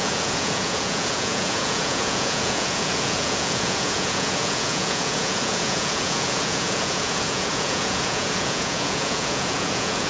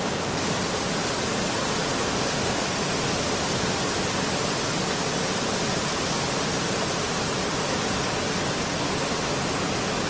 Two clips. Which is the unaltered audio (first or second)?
second